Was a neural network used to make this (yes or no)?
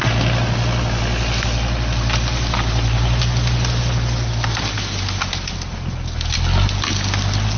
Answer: no